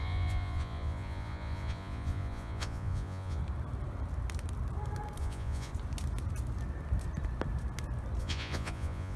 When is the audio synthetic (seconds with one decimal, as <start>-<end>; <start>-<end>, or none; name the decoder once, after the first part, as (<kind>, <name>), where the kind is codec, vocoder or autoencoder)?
0.0-3.4 (vocoder, Vocos); 5.2-5.7; 8.2-9.2